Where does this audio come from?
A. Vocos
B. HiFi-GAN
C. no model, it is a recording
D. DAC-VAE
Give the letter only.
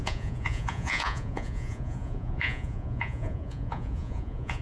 A